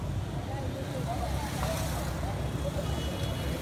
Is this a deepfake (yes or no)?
no